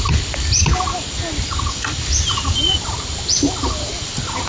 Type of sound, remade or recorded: recorded